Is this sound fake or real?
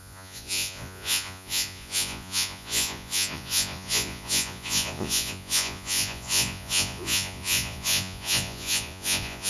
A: fake